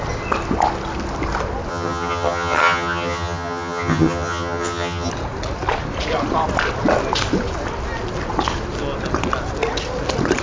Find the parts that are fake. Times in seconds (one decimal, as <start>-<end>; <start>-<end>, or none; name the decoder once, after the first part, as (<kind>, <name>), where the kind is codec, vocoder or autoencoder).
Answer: 1.7-5.1 (vocoder, HiFi-GAN)